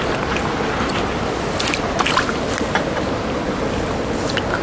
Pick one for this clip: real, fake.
real